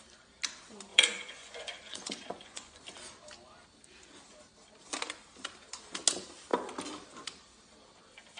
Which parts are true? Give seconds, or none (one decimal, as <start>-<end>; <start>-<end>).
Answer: 0.0-0.9; 2.8-8.4